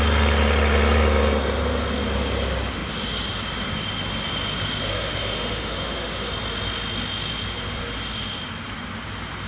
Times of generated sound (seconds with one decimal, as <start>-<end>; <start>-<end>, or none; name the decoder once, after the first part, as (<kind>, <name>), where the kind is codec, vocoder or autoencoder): 4.9-6.3 (autoencoder, DAC-VAE)